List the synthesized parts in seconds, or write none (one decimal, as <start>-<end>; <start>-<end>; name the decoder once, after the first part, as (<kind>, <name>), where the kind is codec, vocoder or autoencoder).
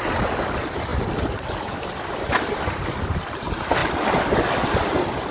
0.9-3.3 (vocoder, BigVGAN v2)